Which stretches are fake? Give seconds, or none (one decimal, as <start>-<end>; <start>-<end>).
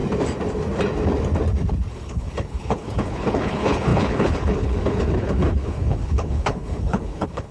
1.9-7.5